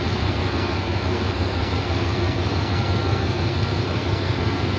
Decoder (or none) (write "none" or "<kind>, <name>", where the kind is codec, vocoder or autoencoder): codec, SNAC